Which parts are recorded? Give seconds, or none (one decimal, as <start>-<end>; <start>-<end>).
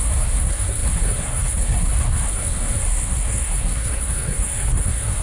none